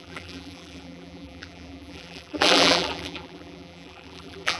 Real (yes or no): no